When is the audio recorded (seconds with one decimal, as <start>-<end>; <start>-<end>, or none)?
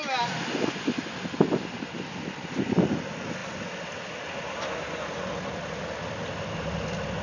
0.0-7.2